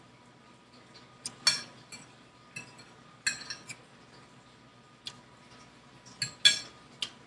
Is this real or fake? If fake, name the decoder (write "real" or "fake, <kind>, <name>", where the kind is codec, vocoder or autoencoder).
real